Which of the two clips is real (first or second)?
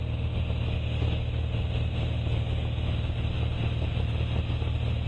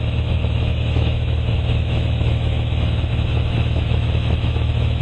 first